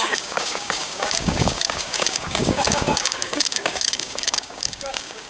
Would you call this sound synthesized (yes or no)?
yes